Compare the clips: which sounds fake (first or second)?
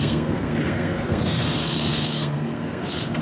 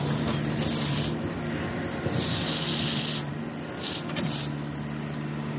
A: first